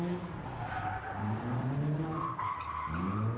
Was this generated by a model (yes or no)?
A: no